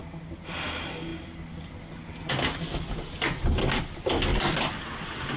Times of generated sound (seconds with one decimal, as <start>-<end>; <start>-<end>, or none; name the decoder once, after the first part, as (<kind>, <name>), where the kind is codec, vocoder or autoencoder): none